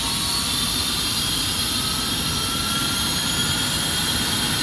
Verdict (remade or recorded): recorded